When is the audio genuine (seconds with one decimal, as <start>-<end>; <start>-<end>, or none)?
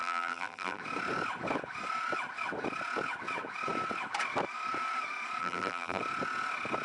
0.8-5.4; 6.0-6.8